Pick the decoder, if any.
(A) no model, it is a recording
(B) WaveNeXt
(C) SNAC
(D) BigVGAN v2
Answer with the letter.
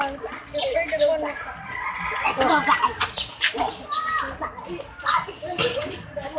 A